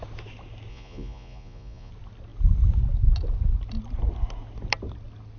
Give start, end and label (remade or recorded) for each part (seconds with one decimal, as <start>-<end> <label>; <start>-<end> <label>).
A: 0.0-0.7 recorded; 0.7-1.9 remade; 1.9-5.4 recorded